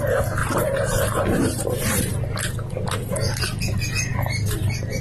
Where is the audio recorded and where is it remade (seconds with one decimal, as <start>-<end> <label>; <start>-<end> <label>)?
0.0-0.4 recorded; 0.4-2.0 remade; 2.0-4.1 recorded; 4.1-5.0 remade